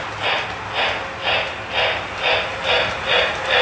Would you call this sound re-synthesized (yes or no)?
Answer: no